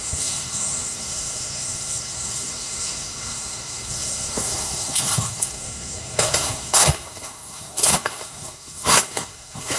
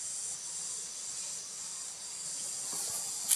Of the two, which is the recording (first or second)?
second